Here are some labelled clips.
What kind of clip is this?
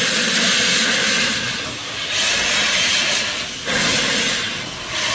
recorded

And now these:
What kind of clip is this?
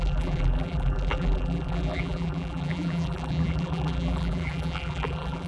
remade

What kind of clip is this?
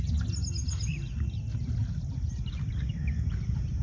recorded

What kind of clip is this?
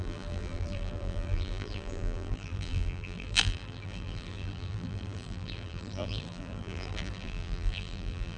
remade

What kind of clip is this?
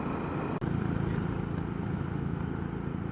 recorded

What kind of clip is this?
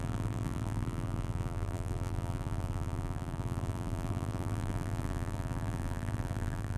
remade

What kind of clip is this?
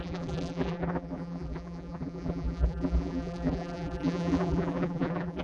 remade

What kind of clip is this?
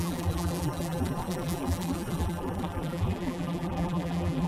remade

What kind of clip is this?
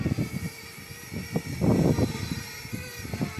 recorded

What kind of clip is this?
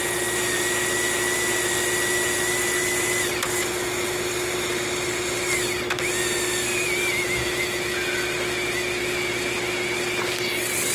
recorded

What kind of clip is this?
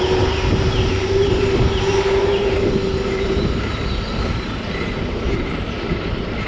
remade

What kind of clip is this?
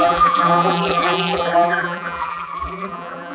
remade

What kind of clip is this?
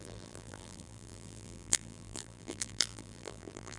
remade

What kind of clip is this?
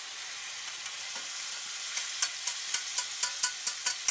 recorded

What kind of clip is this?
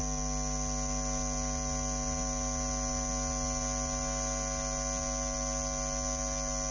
recorded